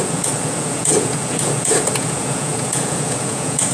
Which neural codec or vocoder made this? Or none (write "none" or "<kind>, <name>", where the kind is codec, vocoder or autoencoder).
vocoder, Vocos